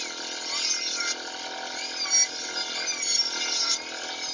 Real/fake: real